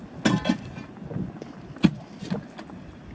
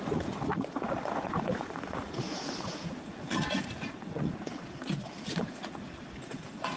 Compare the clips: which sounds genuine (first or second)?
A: first